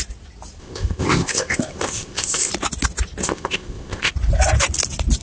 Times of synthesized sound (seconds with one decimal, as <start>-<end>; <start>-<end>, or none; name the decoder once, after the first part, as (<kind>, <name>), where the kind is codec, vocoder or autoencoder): 0.6-2.5 (codec, ZipCodec); 3.2-4.1